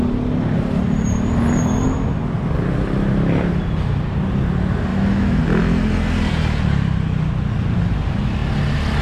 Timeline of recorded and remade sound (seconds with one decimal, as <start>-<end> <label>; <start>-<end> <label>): 0.0-4.9 recorded; 4.9-5.4 remade; 5.4-9.0 recorded